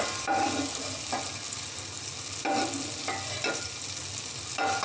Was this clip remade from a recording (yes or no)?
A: no